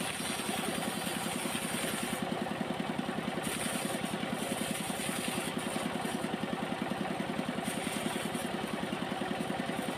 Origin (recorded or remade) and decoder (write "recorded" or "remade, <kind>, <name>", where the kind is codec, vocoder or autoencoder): recorded